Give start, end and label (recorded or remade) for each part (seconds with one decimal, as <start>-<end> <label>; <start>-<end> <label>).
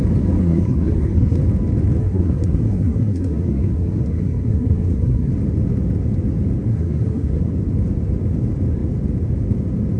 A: 0.0-0.4 recorded; 0.4-1.4 remade; 1.4-2.0 recorded; 2.0-5.3 remade; 5.3-6.7 recorded; 6.7-7.5 remade; 7.5-10.0 recorded